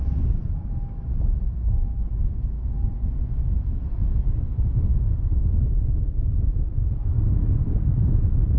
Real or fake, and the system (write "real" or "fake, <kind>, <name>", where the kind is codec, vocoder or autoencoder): real